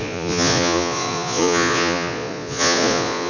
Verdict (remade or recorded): remade